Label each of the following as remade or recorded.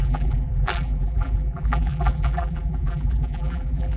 remade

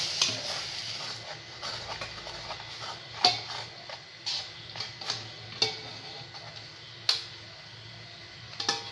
recorded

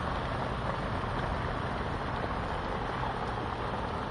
recorded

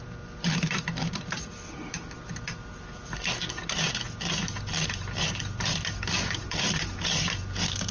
remade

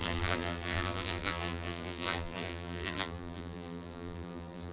remade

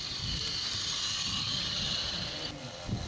recorded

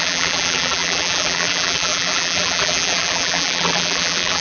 remade